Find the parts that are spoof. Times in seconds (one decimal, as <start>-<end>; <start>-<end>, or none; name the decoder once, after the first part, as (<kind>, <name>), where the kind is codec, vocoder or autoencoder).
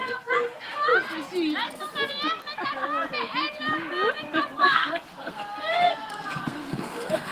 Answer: 0.0-0.9 (codec, SNAC); 4.6-7.3